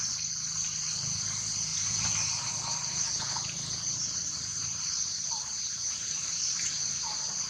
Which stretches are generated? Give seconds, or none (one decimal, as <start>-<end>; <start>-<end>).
1.7-2.5; 4.5-6.7